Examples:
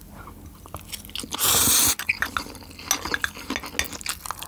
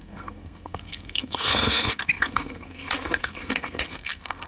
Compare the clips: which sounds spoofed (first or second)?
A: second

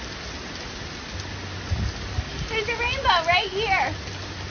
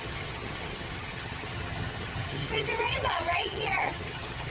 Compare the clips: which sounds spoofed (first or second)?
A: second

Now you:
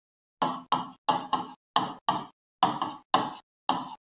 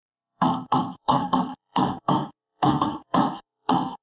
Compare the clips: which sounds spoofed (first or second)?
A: second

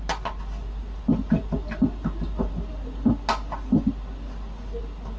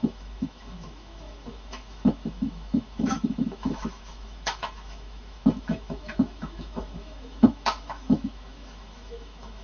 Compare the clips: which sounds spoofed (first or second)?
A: second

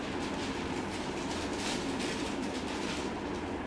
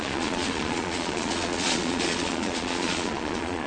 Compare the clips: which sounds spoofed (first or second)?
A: second